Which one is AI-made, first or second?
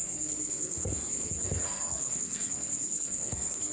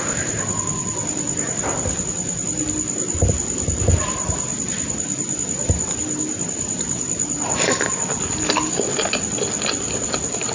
first